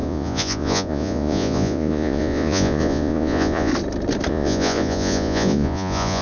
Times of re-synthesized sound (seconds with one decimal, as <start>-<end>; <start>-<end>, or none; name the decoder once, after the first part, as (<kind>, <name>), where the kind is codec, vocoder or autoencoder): 0.0-3.7 (vocoder, Vocos); 4.3-6.2